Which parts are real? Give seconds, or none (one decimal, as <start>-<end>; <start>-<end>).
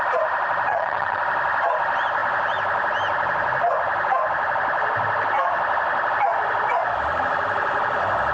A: 0.0-0.7; 1.2-8.3